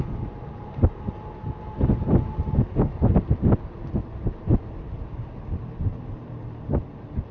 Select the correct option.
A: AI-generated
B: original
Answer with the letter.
B